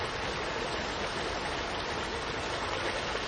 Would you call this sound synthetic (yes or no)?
no